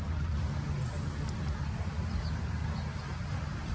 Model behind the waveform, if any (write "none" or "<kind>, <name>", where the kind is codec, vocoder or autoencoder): none